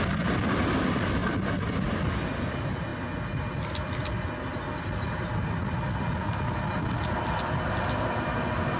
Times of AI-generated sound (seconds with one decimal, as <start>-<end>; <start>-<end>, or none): none